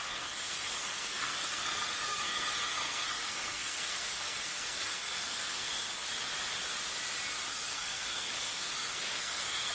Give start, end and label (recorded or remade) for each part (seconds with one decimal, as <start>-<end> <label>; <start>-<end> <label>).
0.0-5.9 remade; 5.9-7.5 recorded; 7.5-9.7 remade